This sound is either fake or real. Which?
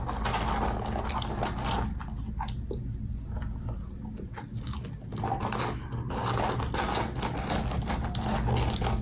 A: real